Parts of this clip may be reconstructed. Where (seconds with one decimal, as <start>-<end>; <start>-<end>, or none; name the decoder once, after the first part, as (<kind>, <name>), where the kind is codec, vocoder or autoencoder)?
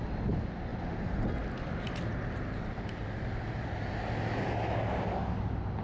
none